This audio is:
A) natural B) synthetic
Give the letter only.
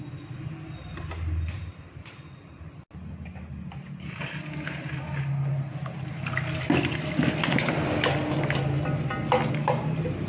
A